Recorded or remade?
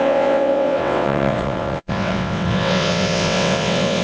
remade